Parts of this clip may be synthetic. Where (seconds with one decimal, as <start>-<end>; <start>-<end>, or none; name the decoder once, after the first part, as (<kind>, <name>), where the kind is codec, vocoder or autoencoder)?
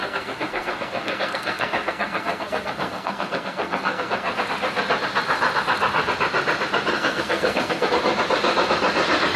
0.0-4.4 (codec, SNAC); 6.9-7.9